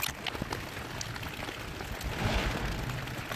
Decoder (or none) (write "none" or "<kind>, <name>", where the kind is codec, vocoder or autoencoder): none